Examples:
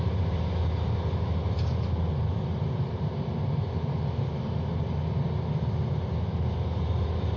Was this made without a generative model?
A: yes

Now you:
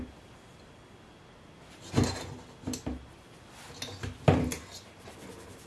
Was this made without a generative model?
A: yes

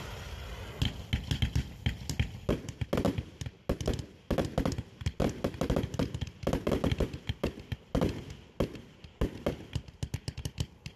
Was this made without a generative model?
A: yes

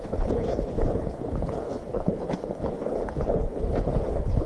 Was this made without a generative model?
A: no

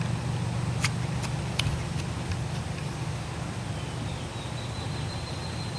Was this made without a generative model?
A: yes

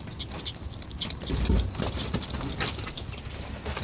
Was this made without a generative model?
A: yes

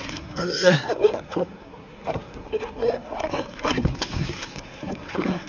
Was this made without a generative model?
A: no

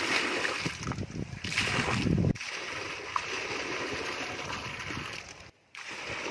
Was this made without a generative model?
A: yes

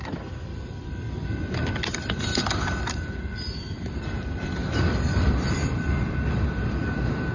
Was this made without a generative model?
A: no